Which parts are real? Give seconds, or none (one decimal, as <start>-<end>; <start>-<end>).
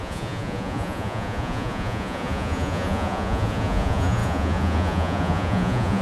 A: none